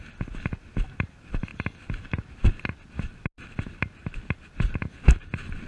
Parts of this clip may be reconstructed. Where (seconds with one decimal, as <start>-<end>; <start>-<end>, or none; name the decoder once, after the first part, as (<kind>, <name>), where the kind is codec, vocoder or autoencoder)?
none